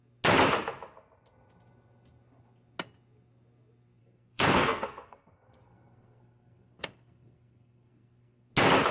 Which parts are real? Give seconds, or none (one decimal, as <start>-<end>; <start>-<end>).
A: 0.0-4.0; 8.5-8.9